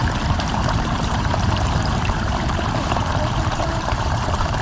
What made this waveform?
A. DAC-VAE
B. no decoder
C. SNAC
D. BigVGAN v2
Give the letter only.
D